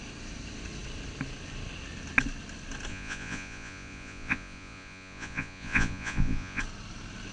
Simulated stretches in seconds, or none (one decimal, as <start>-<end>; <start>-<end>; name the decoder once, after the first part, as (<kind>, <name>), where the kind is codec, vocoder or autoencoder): 2.9-6.6 (vocoder, Vocos)